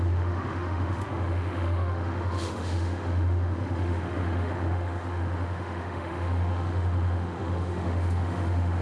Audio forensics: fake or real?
fake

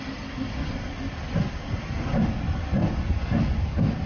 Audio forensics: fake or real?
real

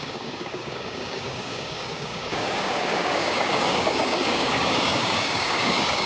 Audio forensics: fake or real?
fake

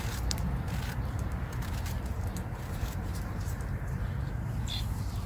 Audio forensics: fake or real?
fake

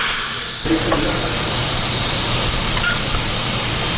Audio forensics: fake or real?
fake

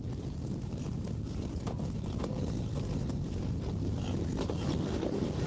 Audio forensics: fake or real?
real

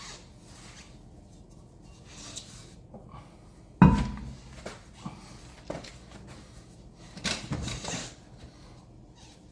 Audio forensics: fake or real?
real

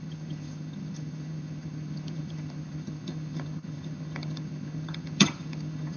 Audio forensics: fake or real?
fake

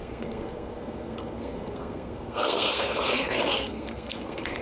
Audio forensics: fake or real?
fake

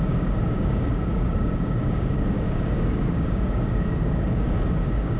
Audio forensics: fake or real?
fake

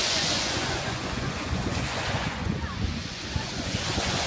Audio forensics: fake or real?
fake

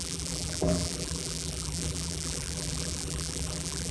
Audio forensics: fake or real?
fake